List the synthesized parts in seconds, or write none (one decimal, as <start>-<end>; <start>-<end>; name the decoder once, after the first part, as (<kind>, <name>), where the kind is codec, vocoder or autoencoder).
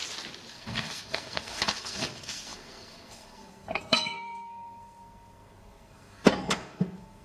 0.5-7.2 (codec, SNAC)